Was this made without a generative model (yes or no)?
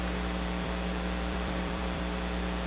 no